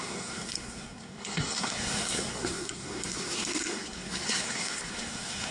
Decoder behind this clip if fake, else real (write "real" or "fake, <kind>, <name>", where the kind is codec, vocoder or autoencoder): fake, codec, SNAC